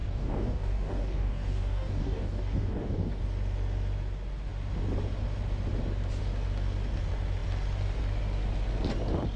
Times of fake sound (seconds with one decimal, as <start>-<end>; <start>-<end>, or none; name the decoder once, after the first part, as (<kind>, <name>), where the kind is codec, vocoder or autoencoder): 0.0-3.2 (codec, DAC)